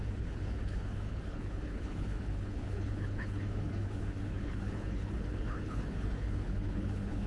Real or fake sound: fake